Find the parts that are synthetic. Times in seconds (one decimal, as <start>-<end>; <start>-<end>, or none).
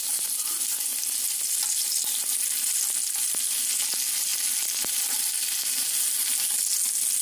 none